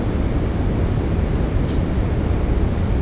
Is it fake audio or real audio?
real